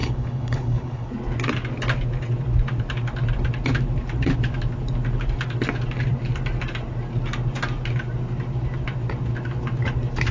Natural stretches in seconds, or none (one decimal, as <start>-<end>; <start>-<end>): 1.1-10.3